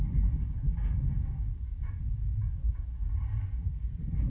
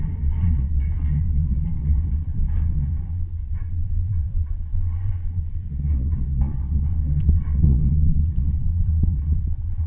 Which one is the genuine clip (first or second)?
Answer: first